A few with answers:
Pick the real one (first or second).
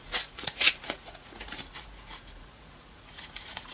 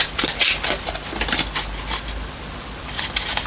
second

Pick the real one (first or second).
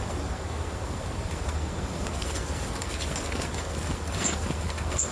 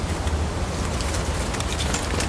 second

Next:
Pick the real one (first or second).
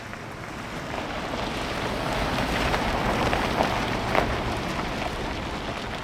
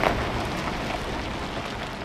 second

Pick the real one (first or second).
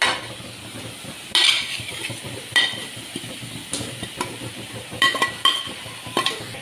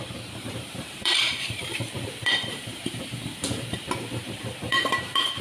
first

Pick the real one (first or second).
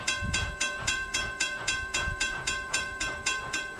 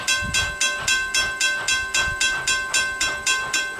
second